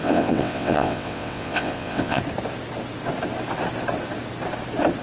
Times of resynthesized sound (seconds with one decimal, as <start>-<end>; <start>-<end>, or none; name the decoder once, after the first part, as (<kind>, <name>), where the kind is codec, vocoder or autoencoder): 0.0-2.2 (vocoder, WaveNeXt)